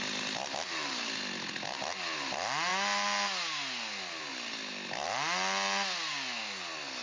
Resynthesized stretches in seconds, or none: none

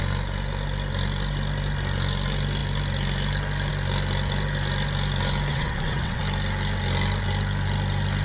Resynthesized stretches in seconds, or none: 5.5-6.2

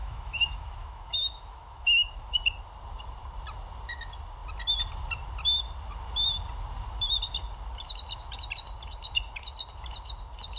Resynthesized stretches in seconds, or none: 0.0-2.3

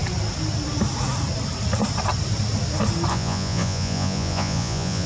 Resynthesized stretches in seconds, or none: 3.1-5.1

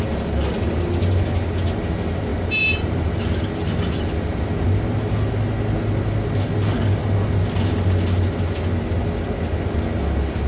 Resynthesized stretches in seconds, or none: 2.3-3.0

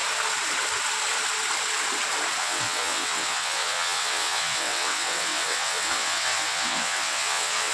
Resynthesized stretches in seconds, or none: 2.4-7.7